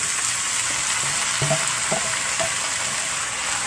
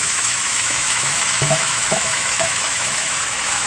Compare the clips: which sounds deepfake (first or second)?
second